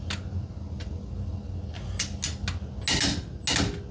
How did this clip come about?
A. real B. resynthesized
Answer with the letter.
A